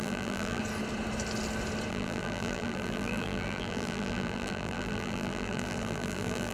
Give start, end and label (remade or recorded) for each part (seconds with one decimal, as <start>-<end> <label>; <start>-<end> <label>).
0.0-0.6 remade; 0.6-1.9 recorded; 1.9-6.5 remade